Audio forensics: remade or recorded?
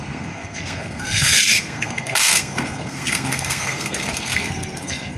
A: remade